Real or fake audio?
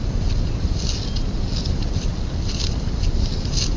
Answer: real